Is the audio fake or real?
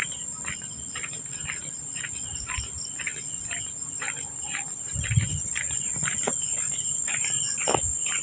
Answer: real